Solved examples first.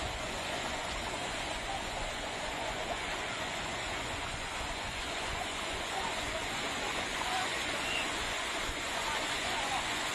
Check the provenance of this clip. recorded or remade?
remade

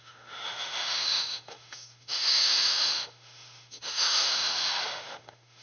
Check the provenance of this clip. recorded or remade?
remade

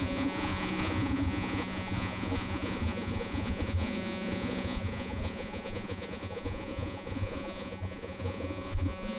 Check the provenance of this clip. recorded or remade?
remade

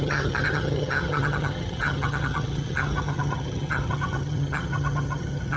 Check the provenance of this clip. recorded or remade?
remade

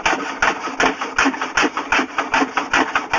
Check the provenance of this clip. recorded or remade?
recorded